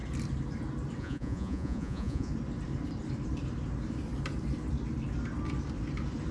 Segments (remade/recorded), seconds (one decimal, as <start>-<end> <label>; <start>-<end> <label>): 0.0-1.0 recorded; 1.0-2.3 remade; 2.3-6.3 recorded